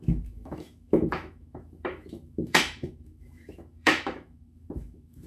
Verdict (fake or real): fake